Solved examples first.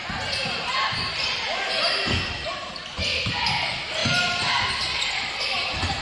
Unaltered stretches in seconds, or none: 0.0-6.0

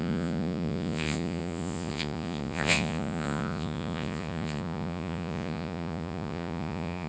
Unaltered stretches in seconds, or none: none